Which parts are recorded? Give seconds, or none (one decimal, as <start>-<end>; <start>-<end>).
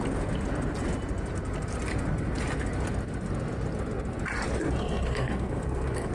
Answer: 0.0-4.8